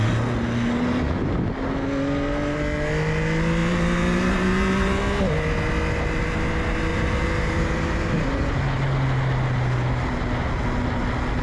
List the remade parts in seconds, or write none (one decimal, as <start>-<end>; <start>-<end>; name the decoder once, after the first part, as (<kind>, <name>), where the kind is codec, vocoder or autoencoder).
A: 3.6-5.0 (vocoder, BigVGAN v2); 6.9-8.6

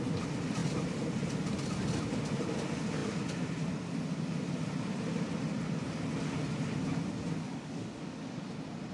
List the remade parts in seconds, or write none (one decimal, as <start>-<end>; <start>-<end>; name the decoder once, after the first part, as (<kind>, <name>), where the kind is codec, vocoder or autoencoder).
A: 7.5-8.4 (codec, DAC)

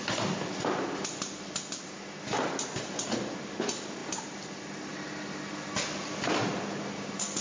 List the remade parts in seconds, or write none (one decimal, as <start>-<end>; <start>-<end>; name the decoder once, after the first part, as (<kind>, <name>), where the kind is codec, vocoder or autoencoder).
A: none

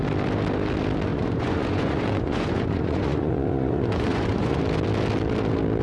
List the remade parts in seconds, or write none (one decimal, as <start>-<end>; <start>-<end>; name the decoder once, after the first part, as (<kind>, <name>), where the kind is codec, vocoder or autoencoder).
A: 1.1-4.6 (vocoder, Vocos)

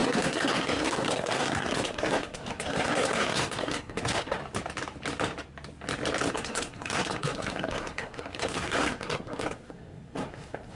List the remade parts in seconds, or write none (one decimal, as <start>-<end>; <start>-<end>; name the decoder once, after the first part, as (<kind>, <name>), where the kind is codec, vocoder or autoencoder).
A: 0.0-4.4 (codec, SNAC); 6.3-10.8

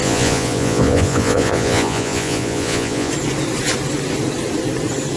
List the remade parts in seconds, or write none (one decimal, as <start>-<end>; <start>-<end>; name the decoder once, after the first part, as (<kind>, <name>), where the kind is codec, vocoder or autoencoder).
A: 0.0-3.1 (vocoder, Vocos)

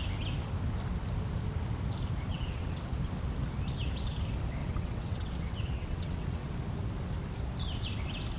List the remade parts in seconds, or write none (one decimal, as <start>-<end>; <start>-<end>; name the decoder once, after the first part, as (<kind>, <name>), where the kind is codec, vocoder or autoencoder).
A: 2.3-2.8 (vocoder, WaveNeXt); 4.6-6.5